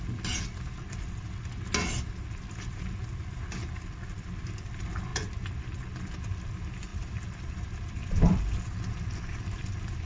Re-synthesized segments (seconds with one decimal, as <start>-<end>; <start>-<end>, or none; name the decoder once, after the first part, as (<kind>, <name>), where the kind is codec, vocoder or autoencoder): 6.9-10.1 (vocoder, BigVGAN v2)

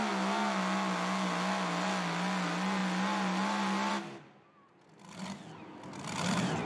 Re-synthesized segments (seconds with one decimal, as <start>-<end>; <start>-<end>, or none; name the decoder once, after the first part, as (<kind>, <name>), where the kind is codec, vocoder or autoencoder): none